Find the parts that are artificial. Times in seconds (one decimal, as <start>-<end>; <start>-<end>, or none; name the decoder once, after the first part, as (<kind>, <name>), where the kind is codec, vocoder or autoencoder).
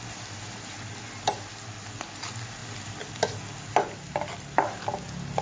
none